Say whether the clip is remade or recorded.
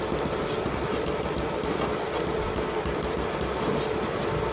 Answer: recorded